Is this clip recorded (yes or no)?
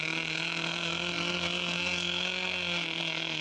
no